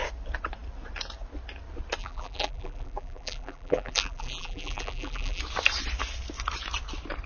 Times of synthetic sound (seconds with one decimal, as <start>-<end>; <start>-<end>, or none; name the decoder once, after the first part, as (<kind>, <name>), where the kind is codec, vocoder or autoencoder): 2.0-5.4 (vocoder, BigVGAN v2)